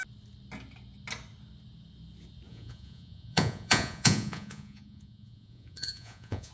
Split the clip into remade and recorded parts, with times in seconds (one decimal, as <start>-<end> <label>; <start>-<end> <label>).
0.0-2.5 recorded; 2.5-6.5 remade